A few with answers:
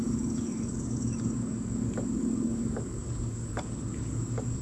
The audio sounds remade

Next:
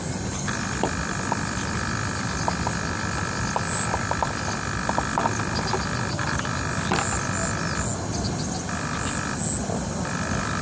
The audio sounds recorded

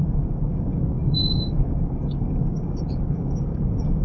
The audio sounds remade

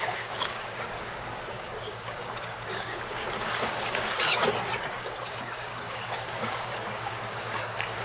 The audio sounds remade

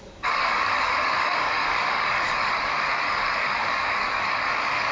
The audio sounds remade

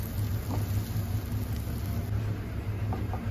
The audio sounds recorded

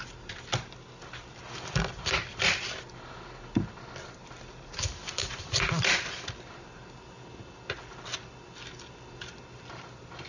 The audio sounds recorded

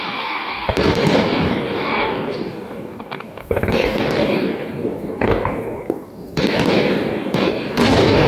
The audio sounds remade